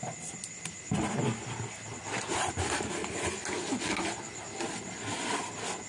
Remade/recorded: recorded